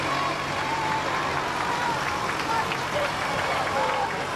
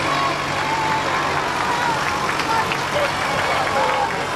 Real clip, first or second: second